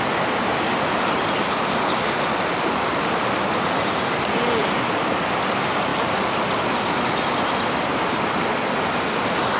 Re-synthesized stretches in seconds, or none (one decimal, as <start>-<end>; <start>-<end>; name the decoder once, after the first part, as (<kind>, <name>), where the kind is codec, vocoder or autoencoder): none